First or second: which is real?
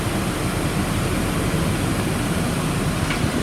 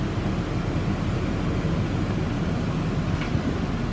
second